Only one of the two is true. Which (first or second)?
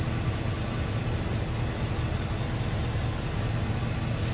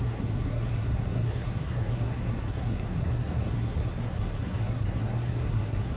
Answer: first